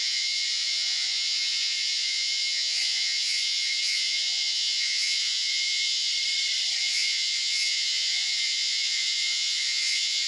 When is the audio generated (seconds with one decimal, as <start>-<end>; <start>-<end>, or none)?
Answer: 0.0-6.1; 6.8-10.3